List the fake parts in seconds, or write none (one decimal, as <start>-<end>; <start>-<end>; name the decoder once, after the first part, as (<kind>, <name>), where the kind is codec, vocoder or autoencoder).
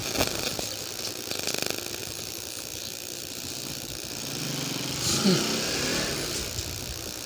2.0-4.5 (vocoder, BigVGAN v2)